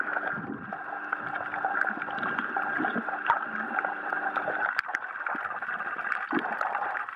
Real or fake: real